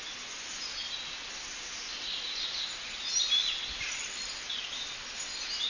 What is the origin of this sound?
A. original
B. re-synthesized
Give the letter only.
A